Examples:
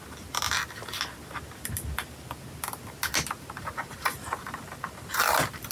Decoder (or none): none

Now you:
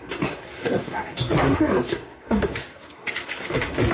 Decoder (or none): codec, SNAC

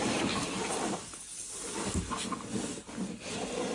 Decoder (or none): none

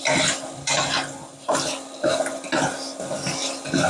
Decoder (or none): none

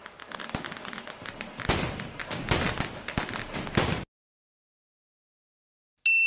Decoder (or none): none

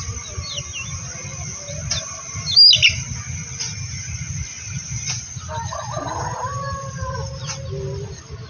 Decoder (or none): none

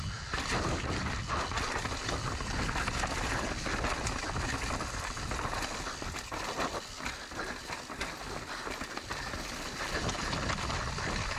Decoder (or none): none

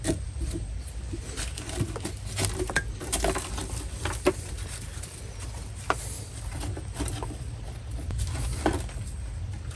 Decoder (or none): none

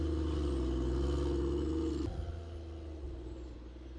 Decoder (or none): none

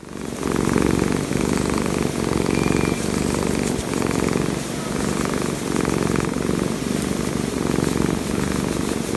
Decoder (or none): none